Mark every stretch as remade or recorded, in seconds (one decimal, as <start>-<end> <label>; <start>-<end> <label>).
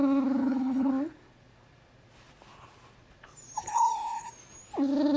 0.0-0.4 recorded; 0.4-0.9 remade; 0.9-3.6 recorded; 3.6-4.3 remade; 4.3-5.2 recorded